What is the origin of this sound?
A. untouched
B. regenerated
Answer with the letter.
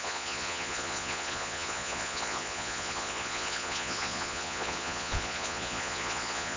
B